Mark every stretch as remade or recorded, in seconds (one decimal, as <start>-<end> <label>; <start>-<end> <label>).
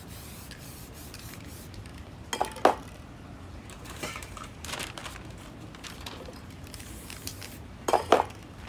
0.0-1.9 remade; 1.9-3.5 recorded; 3.5-5.0 remade; 5.0-5.9 recorded; 5.9-8.7 remade